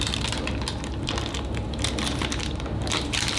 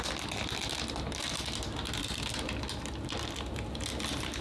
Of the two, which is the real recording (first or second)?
second